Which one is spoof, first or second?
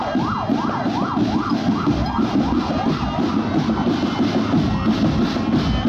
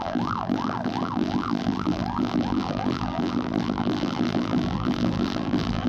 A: second